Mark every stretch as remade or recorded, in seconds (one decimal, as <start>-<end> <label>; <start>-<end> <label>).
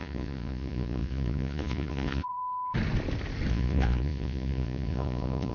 0.0-2.4 remade; 2.4-3.5 recorded; 3.5-5.5 remade